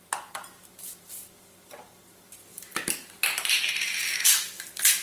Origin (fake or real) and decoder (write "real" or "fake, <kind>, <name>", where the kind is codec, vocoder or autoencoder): fake, vocoder, BigVGAN v2